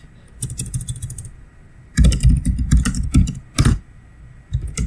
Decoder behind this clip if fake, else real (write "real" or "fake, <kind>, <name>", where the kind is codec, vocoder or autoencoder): real